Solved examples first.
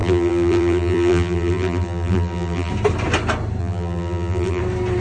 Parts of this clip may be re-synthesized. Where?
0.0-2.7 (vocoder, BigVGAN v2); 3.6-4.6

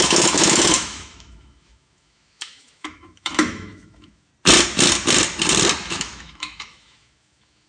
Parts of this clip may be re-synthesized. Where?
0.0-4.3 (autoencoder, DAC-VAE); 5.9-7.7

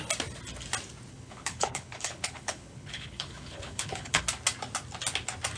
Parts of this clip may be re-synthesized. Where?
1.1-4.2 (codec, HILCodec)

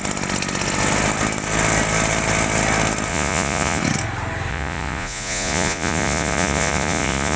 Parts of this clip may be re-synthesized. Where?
3.1-3.8 (vocoder, Vocos); 4.5-7.4

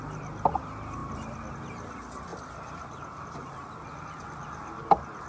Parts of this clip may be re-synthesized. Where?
1.0-1.5 (vocoder, BigVGAN v2)

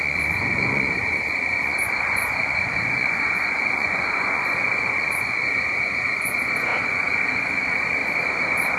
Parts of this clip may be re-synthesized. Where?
0.0-8.0 (vocoder, Vocos)

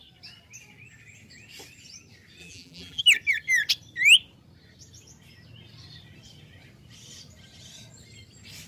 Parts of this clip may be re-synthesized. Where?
2.4-3.0 (vocoder, BigVGAN v2)